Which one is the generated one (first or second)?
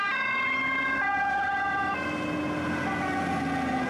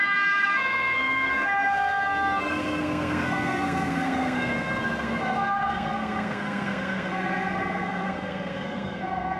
second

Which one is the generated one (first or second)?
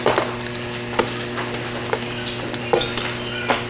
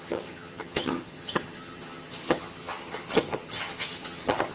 second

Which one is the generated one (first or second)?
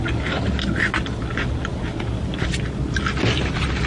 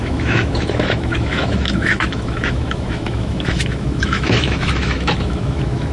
second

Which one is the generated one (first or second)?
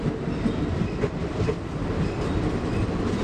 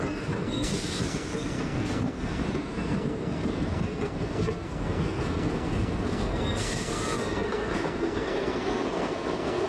second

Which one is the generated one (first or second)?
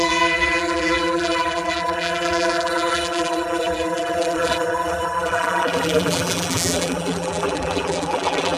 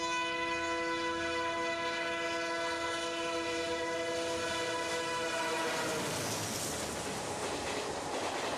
first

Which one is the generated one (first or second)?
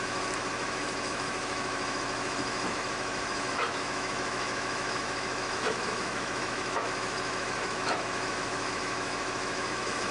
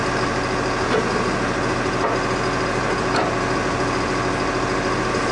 first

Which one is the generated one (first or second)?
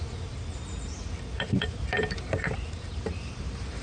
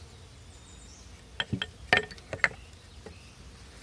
first